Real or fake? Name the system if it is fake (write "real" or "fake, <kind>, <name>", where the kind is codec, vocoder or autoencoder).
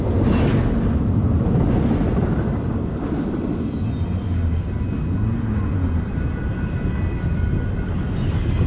real